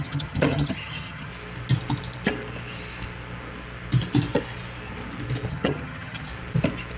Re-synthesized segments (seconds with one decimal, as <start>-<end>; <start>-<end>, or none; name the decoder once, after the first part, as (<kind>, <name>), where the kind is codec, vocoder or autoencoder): 0.0-1.3 (vocoder, HiFi-GAN); 5.5-6.3